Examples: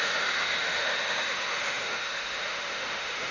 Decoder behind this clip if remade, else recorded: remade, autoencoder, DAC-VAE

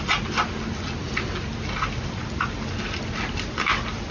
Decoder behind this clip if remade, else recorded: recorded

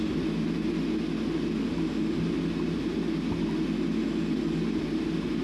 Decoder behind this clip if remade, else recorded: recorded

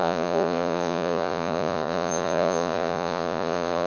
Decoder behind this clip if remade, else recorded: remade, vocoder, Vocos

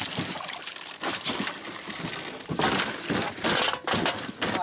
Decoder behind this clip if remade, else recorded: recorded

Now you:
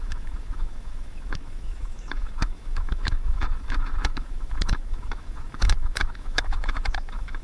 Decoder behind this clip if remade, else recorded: remade, autoencoder, DAC-VAE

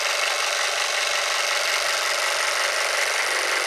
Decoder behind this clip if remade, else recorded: recorded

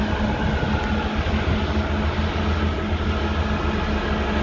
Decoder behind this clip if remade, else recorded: recorded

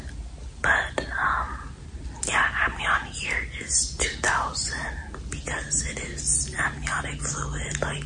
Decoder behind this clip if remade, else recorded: recorded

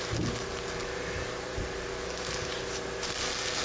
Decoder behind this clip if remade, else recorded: recorded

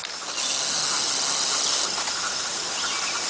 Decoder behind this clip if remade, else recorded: recorded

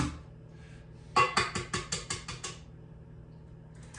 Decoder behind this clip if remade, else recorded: recorded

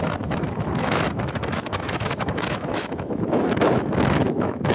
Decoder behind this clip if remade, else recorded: remade, autoencoder, DAC-VAE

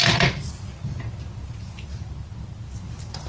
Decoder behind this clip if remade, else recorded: recorded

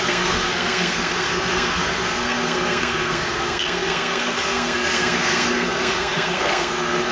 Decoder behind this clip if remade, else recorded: remade, codec, SNAC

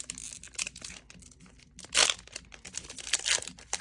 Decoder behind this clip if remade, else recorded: recorded